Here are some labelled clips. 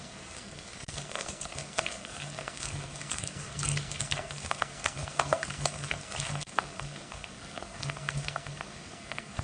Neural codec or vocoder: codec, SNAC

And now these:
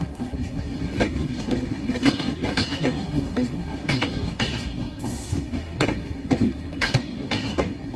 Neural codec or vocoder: codec, SNAC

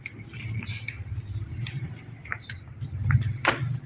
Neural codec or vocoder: none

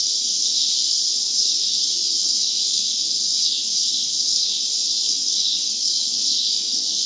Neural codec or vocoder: codec, SNAC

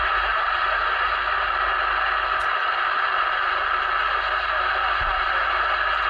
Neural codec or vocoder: none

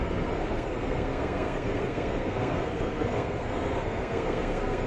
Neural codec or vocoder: codec, SNAC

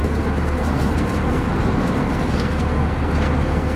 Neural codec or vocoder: codec, SNAC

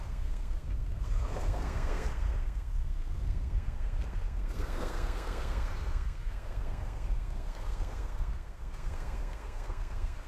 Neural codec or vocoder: codec, SNAC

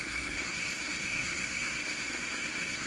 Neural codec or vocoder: codec, SNAC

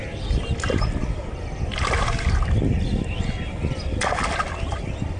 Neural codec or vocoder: none